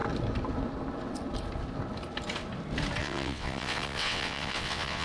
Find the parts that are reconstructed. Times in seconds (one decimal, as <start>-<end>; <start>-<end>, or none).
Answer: 3.0-5.0